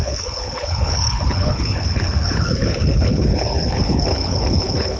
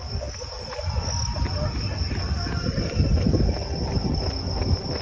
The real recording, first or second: second